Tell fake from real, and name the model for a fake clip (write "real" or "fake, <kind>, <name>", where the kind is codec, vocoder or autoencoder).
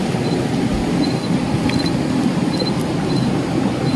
real